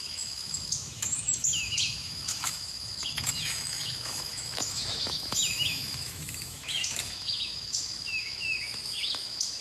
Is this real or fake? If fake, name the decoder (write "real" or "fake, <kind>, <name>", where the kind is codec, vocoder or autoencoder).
fake, autoencoder, DAC-VAE